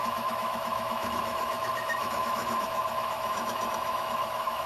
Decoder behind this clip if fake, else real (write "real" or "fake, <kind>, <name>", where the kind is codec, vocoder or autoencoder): fake, autoencoder, DAC-VAE